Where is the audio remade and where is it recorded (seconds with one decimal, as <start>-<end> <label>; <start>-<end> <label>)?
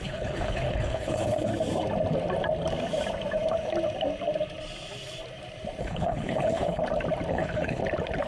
0.0-1.5 remade; 1.5-5.8 recorded; 5.8-6.8 remade; 6.8-7.3 recorded; 7.3-7.8 remade; 7.8-8.3 recorded